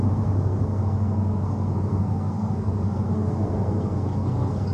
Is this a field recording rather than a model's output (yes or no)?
no